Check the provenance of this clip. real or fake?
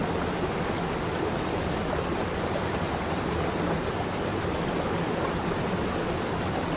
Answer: real